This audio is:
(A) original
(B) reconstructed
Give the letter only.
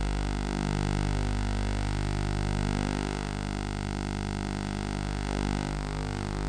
A